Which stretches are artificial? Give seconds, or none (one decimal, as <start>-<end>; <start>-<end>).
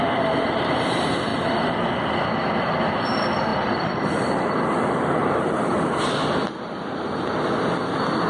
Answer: 1.3-2.2; 3.5-6.1